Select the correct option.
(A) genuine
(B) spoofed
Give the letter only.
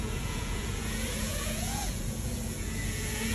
B